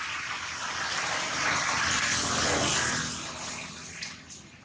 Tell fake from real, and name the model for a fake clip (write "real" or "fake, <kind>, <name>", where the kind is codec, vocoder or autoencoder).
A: real